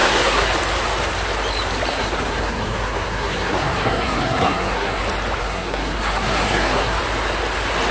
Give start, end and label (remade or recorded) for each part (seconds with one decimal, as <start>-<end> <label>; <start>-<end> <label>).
0.0-0.5 remade; 0.5-1.9 recorded; 1.9-5.0 remade; 5.0-5.4 recorded; 5.4-7.0 remade; 7.0-7.9 recorded